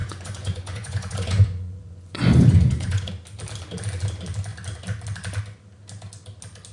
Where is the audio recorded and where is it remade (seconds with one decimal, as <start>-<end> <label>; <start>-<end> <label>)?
0.0-3.1 remade; 3.1-6.7 recorded